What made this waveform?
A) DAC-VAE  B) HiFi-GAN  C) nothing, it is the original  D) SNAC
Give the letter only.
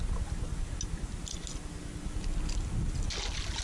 C